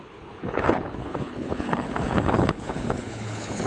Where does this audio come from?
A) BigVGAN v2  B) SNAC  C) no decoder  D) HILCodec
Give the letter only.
D